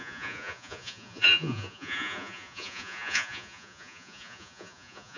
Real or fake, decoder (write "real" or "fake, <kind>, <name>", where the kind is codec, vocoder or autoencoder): fake, vocoder, Vocos